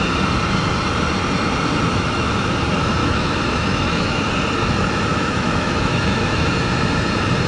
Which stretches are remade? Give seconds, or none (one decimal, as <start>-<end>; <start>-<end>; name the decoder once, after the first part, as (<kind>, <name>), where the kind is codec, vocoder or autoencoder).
1.9-2.5 (autoencoder, DAC-VAE); 3.0-4.3; 5.1-6.5